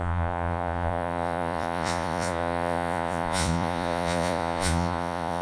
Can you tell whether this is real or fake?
fake